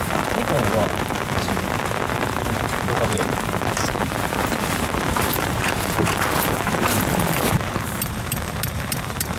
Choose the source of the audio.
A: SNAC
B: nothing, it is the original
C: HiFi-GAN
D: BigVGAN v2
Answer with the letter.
D